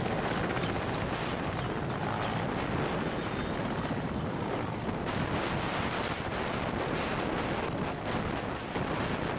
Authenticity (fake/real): real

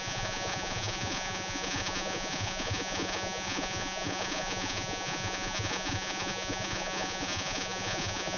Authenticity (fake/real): fake